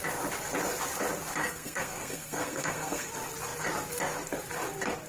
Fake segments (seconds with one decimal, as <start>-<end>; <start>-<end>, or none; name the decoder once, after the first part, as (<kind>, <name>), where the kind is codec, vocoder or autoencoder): 1.4-3.1 (codec, SNAC)